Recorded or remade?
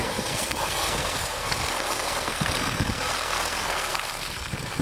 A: remade